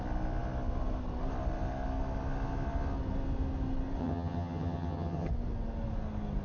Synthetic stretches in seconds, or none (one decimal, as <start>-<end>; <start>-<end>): 4.0-5.3